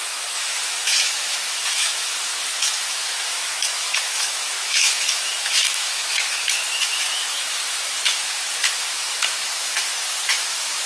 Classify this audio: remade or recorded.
remade